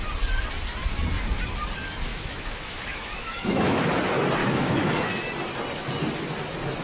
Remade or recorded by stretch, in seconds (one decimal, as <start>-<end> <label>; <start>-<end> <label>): 0.0-2.1 recorded; 2.1-3.8 remade; 3.8-4.4 recorded; 4.4-4.9 remade; 4.9-6.8 recorded

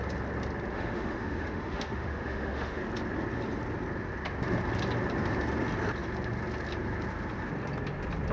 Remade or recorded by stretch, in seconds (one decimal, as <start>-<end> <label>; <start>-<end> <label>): 0.0-0.7 recorded; 0.7-2.8 remade; 2.8-8.3 recorded

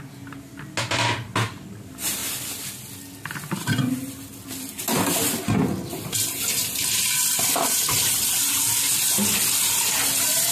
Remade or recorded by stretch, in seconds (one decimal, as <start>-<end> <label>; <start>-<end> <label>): 0.0-10.5 recorded

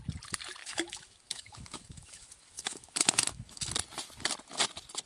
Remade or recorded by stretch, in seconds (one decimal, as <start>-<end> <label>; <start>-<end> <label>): 0.0-0.6 recorded; 0.6-3.7 remade; 3.7-5.1 recorded

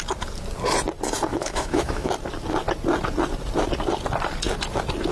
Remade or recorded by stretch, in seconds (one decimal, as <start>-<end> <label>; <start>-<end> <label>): 0.0-1.3 recorded; 1.3-2.1 remade; 2.1-5.1 recorded